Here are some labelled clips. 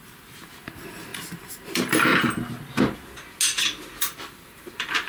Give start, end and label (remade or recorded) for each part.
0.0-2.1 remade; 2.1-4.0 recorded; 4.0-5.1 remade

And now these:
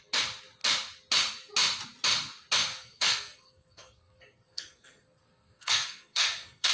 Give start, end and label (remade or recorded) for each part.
0.0-2.7 recorded; 2.7-6.7 remade

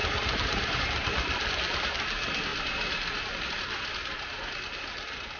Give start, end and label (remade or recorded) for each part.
0.0-0.8 remade; 0.8-5.4 recorded

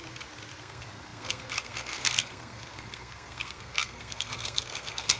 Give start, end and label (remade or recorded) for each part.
0.0-0.6 recorded; 0.6-5.2 remade

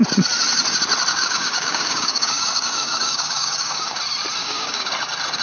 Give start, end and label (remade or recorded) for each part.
0.0-1.1 recorded; 1.1-4.0 remade; 4.0-4.4 recorded; 4.4-4.9 remade; 4.9-5.4 recorded

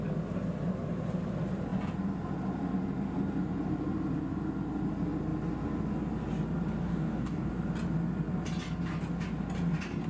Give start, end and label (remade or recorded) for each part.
0.0-6.8 recorded; 6.8-7.5 remade; 7.5-10.1 recorded

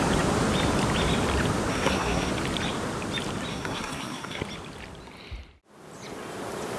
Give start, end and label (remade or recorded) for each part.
0.0-1.7 recorded; 1.7-2.3 remade; 2.3-3.5 recorded; 3.5-4.4 remade; 4.4-6.8 recorded

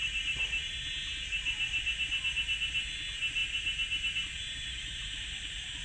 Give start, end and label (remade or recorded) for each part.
0.0-3.4 recorded; 3.4-4.9 remade; 4.9-5.8 recorded